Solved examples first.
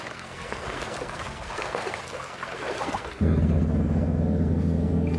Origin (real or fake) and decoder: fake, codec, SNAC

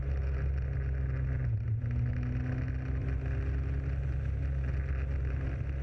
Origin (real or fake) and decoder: real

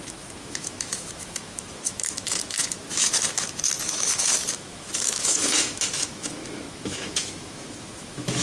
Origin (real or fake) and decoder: fake, autoencoder, DAC-VAE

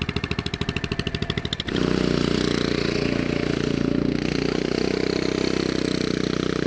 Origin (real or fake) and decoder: real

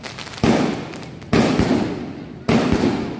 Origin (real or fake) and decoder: real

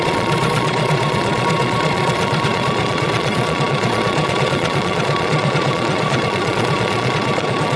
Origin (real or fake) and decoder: fake, vocoder, Vocos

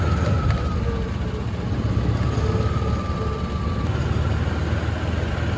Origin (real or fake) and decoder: real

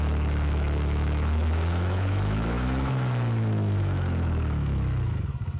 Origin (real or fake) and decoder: fake, autoencoder, DAC-VAE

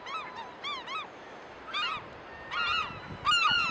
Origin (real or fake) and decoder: real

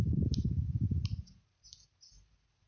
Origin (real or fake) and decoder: fake, vocoder, BigVGAN v2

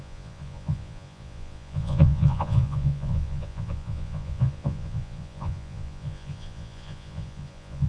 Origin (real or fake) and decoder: fake, vocoder, Vocos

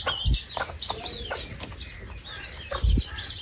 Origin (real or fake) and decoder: real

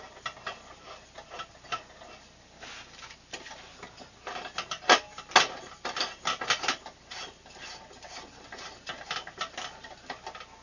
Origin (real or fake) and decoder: real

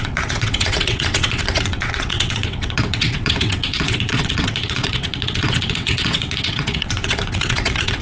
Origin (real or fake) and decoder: fake, vocoder, WaveNeXt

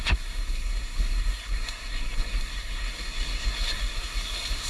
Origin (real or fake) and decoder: fake, codec, SNAC